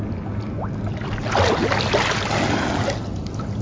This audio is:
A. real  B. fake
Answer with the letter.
A